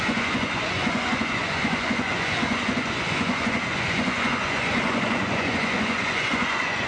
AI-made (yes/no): yes